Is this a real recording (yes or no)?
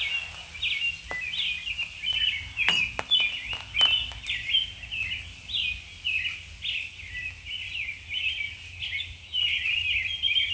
yes